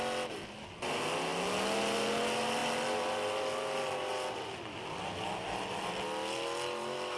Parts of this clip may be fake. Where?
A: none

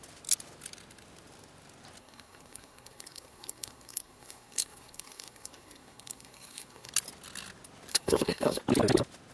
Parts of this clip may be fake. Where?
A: 2.0-6.9 (codec, SNAC); 7.9-8.6

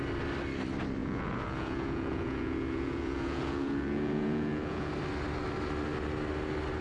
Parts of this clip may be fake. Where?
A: 1.0-4.9 (vocoder, Vocos)